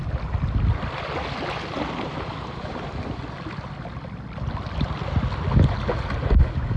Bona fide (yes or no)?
yes